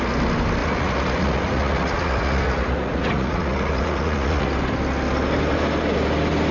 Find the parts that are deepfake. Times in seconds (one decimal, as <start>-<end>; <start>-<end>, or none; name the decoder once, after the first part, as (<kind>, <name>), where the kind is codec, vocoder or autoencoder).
0.6-4.5 (vocoder, Vocos)

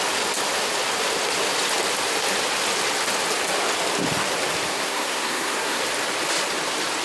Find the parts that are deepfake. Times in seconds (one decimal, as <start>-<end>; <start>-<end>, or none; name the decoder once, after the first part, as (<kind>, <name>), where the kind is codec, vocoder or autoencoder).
4.7-5.8 (codec, SNAC)

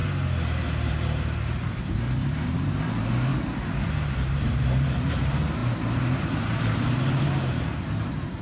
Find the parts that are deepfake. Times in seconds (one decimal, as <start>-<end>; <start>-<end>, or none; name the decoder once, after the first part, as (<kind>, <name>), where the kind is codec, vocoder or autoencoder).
0.9-3.3 (vocoder, BigVGAN v2); 3.8-8.4

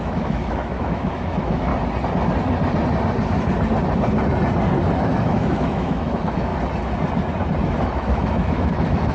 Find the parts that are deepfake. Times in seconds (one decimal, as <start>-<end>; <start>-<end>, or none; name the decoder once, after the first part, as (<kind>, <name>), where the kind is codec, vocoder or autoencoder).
0.0-1.7 (autoencoder, DAC-VAE); 5.0-6.5; 7.8-9.1

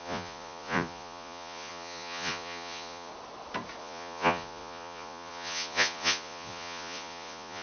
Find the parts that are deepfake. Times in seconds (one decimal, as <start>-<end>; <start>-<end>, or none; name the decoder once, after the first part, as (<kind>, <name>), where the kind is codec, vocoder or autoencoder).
0.0-3.1 (vocoder, Vocos); 3.8-7.6

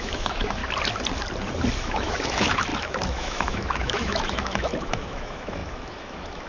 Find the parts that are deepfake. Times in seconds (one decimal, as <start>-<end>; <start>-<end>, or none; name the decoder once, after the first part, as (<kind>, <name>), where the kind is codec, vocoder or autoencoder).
0.0-0.6 (autoencoder, DAC-VAE); 1.8-6.5

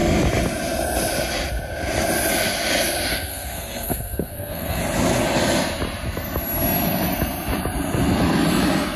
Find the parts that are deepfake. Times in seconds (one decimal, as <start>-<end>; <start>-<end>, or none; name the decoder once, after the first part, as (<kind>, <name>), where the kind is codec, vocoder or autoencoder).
3.1-4.8 (codec, SNAC)

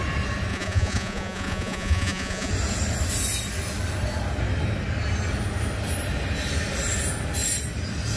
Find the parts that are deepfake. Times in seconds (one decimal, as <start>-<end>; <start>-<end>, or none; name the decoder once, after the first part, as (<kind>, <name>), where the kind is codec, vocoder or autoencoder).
0.5-2.5 (vocoder, Vocos)